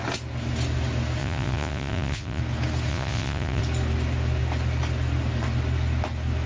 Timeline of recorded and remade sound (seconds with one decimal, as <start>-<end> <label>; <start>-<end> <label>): 0.0-1.2 recorded; 1.2-2.4 remade; 2.4-2.9 recorded; 2.9-3.6 remade; 3.6-6.5 recorded